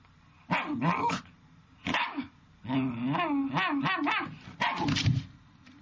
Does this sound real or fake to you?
real